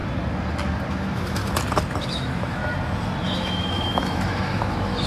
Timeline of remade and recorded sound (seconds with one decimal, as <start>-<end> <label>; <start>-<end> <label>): 0.0-0.9 recorded; 0.9-1.4 remade; 1.4-2.0 recorded; 2.0-2.6 remade; 2.6-3.2 recorded; 3.2-5.1 remade